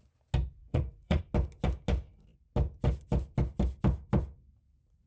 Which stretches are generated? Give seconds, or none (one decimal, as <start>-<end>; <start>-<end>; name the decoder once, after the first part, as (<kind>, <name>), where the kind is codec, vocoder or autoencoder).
0.6-1.2 (vocoder, Vocos)